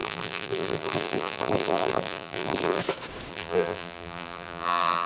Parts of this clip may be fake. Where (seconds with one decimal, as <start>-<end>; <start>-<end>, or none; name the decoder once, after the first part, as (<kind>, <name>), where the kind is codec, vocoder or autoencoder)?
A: 0.0-2.8 (vocoder, BigVGAN v2); 3.3-5.1